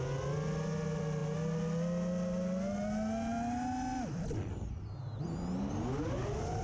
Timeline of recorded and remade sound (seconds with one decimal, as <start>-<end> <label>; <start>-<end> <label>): 0.0-6.6 recorded